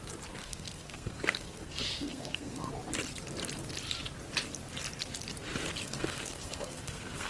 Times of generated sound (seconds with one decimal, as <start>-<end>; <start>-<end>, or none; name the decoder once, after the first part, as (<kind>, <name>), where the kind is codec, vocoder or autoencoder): 0.4-2.7 (codec, SNAC); 5.8-7.3